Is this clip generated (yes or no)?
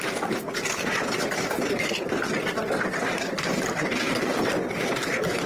no